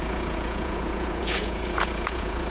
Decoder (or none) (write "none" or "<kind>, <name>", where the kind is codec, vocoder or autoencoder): vocoder, Vocos